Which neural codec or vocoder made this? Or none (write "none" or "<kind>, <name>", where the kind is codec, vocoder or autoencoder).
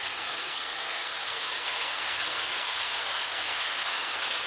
codec, SNAC